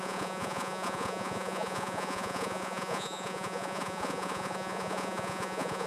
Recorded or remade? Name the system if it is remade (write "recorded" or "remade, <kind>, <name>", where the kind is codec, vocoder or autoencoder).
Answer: remade, vocoder, Vocos